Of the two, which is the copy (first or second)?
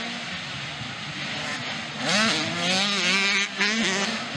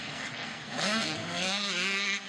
second